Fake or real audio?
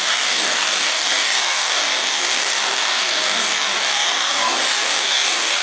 fake